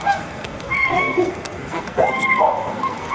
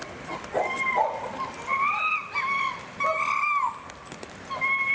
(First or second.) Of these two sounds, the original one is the second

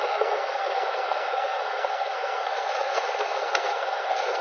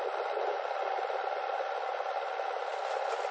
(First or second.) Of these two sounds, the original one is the second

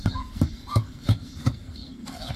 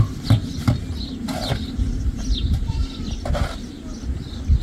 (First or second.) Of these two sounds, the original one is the second